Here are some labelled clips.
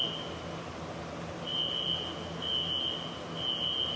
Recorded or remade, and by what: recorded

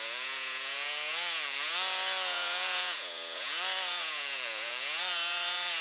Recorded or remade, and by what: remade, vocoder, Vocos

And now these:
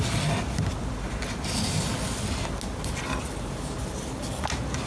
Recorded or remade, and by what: recorded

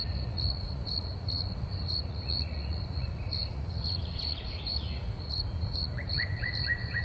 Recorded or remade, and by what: remade, vocoder, Vocos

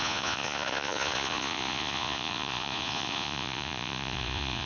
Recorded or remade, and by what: remade, vocoder, Vocos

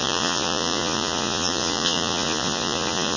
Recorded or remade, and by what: remade, vocoder, Vocos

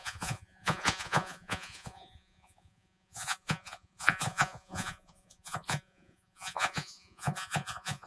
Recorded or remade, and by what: remade, vocoder, Vocos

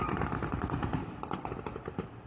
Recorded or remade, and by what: recorded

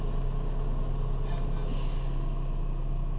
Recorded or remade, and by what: recorded